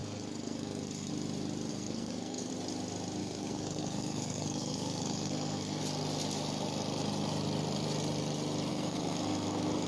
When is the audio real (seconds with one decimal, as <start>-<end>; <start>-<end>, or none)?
1.1-1.7; 2.5-3.2; 5.8-8.7